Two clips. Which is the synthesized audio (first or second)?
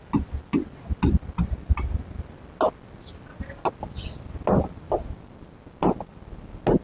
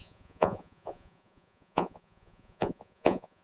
second